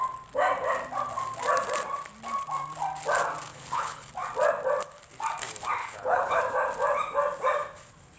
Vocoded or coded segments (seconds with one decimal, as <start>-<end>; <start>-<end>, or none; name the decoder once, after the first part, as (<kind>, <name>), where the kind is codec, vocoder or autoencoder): 3.5-4.1 (codec, HILCodec); 5.8-6.4